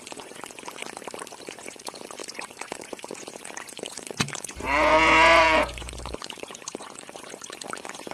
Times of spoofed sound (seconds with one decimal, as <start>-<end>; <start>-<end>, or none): 0.0-0.8; 1.4-8.1